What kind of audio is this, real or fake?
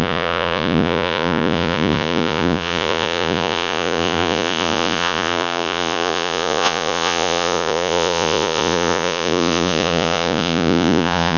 fake